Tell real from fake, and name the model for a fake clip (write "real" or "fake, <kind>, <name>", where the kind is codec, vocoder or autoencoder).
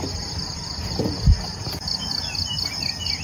real